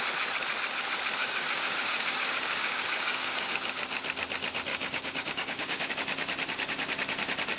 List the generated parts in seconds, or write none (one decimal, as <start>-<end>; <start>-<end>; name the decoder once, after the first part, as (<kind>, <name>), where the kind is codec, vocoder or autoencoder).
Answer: 1.2-3.5 (codec, DAC); 4.7-5.9